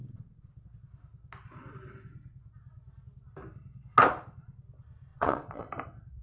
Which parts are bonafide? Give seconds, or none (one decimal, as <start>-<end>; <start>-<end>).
0.5-5.1; 5.7-6.2